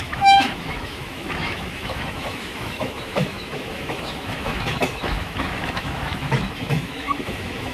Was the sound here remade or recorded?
remade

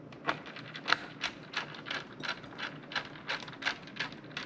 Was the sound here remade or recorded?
recorded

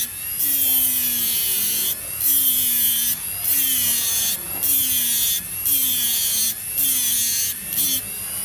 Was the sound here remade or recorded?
recorded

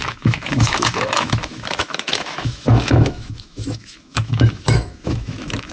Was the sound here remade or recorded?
remade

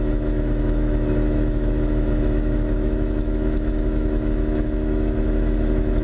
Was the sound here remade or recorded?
remade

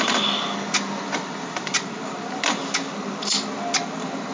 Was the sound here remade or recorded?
recorded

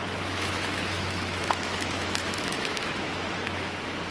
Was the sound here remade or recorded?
remade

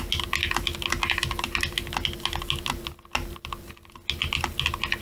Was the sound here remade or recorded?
recorded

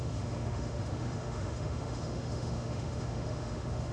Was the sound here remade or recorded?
remade